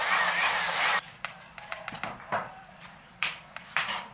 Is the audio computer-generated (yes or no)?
yes